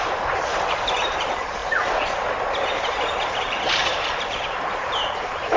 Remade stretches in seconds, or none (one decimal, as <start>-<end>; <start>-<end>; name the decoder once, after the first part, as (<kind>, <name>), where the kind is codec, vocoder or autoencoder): 0.0-1.6 (vocoder, BigVGAN v2); 2.7-5.6